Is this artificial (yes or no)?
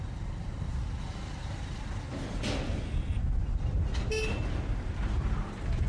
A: no